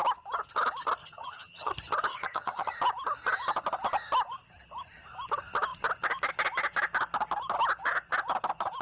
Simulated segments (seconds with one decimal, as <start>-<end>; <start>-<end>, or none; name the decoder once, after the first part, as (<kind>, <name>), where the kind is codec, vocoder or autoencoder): 1.0-1.7 (vocoder, HiFi-GAN); 2.1-2.7